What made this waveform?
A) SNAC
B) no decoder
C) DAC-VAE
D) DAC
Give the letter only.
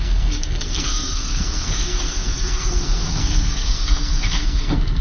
A